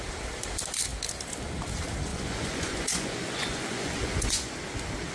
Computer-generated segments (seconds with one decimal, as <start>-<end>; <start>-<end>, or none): 2.1-4.5

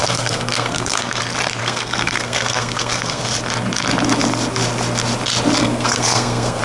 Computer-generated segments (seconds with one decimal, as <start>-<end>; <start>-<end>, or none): 0.0-1.2; 1.6-3.2; 5.6-6.6